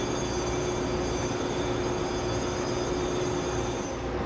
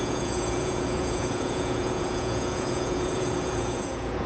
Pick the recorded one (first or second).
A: first